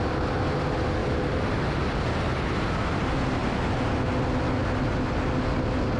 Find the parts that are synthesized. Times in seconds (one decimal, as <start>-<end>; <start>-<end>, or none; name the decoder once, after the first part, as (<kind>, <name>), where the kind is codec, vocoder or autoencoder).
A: 1.0-2.3 (vocoder, BigVGAN v2); 3.4-3.9